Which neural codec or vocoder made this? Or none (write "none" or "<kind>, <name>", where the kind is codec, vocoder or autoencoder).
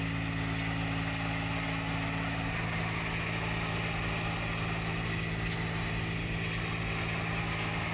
none